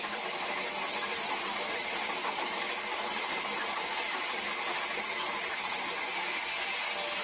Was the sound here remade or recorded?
recorded